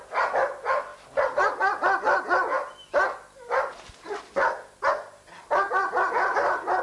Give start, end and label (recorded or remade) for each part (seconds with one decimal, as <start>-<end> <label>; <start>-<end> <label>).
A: 0.0-6.8 recorded